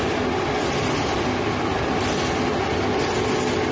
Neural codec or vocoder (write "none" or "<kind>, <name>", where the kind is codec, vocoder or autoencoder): none